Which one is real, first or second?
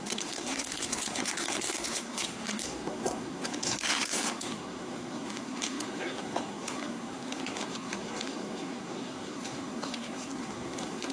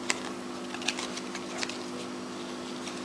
second